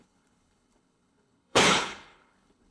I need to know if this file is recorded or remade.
remade